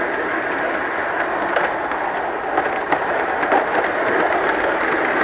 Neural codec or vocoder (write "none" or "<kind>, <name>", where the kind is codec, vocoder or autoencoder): none